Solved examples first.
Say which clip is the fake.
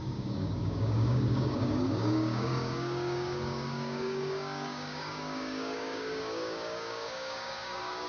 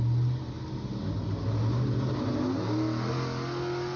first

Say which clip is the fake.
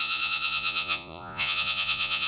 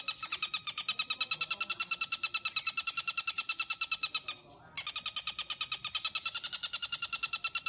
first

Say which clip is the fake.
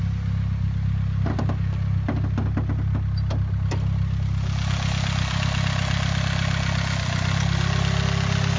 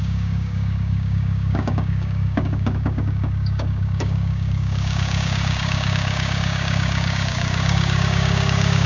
second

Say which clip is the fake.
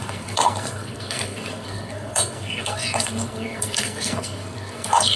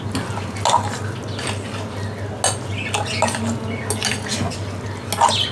first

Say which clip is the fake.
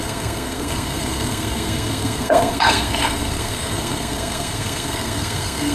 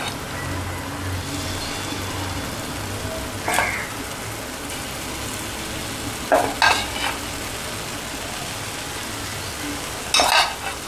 first